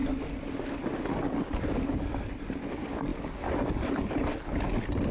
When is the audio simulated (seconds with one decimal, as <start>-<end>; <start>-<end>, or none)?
none